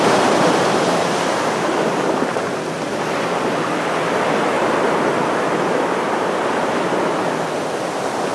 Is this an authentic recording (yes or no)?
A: yes